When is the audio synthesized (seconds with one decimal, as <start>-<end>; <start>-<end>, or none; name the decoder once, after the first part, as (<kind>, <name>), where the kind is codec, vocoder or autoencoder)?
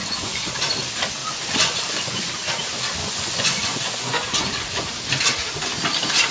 0.0-0.6 (vocoder, Vocos); 1.2-2.3; 3.0-4.9